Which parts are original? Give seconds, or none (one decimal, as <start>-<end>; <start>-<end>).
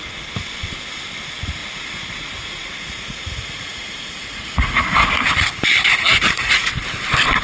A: 0.0-1.6; 5.2-6.2; 6.7-7.4